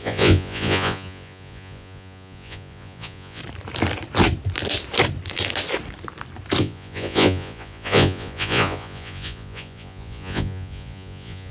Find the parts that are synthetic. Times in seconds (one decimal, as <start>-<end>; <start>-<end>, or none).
0.0-3.4; 6.6-11.5